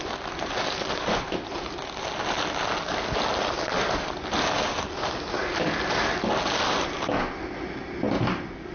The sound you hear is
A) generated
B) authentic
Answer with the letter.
B